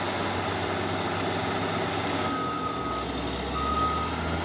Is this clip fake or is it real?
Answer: real